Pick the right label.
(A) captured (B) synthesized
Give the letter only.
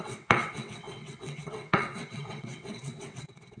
B